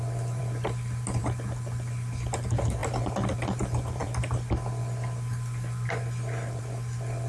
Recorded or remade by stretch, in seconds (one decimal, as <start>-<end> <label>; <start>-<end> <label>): 0.0-7.3 recorded